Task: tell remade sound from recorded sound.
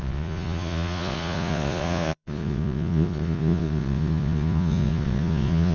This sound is remade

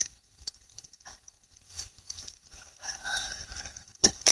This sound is remade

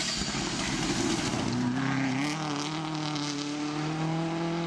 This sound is recorded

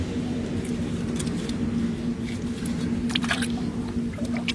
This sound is recorded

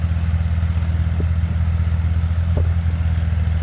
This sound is recorded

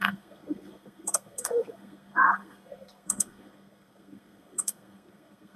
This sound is remade